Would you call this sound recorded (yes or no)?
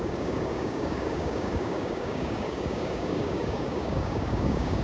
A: no